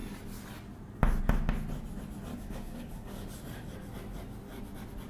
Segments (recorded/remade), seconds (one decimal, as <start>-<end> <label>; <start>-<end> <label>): 0.0-2.3 recorded; 2.3-3.3 remade; 3.3-5.1 recorded